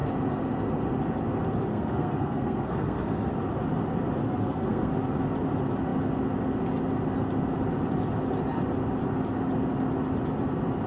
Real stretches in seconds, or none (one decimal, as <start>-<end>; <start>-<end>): 0.0-1.7; 3.3-4.2; 4.9-10.9